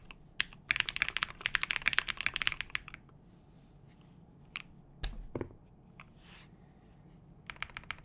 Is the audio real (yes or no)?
yes